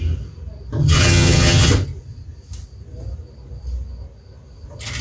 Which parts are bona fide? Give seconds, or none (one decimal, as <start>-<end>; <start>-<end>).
0.0-0.8; 1.7-5.0